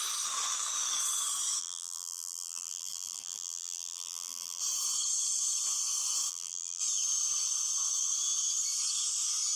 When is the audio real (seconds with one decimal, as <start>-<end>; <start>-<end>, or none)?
0.0-1.6; 4.6-6.3; 6.8-9.6